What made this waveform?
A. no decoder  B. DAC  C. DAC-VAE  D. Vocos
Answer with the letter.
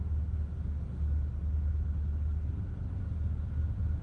A